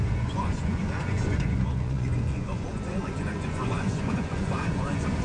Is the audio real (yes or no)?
no